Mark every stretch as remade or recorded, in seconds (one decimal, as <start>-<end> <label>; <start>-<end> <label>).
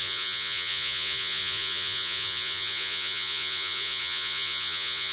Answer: 0.0-5.1 remade